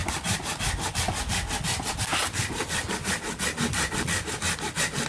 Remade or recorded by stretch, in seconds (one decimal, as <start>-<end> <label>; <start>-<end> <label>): 0.0-5.1 recorded